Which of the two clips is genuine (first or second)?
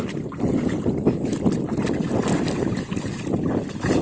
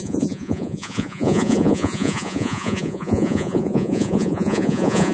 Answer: first